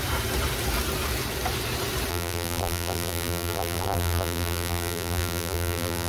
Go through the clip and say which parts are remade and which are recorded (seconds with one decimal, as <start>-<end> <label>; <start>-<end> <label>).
0.0-2.1 recorded; 2.1-6.1 remade